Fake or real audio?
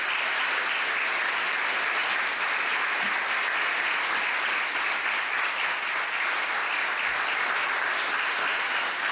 real